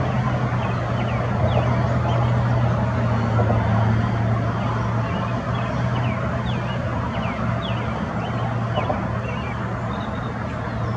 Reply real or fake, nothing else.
real